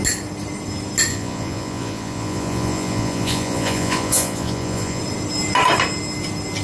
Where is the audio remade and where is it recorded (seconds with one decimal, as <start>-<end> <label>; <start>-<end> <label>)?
0.0-1.1 recorded; 1.1-5.0 remade; 5.0-6.6 recorded